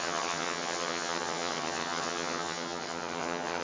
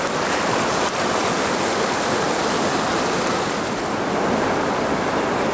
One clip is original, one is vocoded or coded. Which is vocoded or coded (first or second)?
first